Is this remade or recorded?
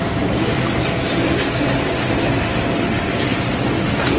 recorded